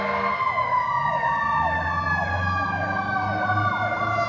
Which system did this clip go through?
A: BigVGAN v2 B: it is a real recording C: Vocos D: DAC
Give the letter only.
B